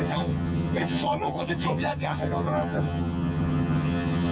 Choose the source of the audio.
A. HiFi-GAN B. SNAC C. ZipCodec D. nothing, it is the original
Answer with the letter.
A